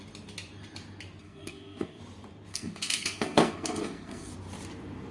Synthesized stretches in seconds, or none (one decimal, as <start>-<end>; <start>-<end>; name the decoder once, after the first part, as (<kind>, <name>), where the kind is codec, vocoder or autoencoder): 1.2-2.0 (codec, SNAC); 2.5-4.3